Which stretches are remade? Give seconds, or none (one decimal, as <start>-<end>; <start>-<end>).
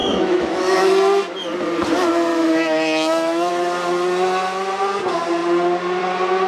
0.0-0.9; 2.3-3.5